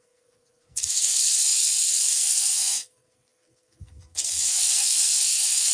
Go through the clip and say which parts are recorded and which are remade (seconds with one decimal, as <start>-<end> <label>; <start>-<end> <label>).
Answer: 0.0-5.7 remade